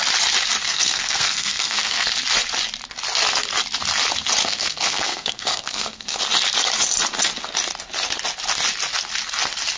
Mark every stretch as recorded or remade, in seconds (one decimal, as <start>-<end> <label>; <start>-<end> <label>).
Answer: 0.0-0.6 recorded; 0.6-2.1 remade; 2.1-4.4 recorded; 4.4-6.2 remade; 6.2-9.8 recorded